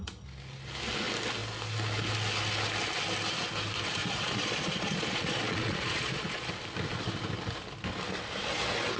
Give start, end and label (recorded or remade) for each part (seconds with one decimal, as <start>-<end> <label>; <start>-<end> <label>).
0.0-4.0 recorded; 4.0-6.5 remade; 6.5-9.0 recorded